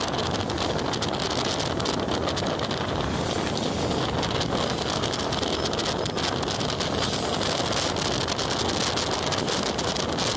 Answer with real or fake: real